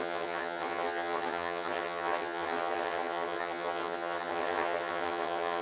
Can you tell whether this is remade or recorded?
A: remade